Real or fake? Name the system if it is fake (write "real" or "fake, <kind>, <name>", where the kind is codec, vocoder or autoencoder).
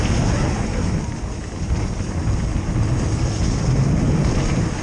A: real